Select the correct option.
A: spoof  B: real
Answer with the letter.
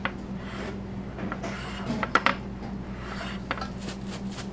B